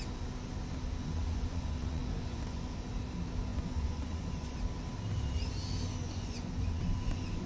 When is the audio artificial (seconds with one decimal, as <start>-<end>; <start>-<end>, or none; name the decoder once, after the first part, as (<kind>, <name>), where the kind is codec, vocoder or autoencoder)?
1.0-2.7 (vocoder, Vocos); 3.5-4.6; 6.0-7.5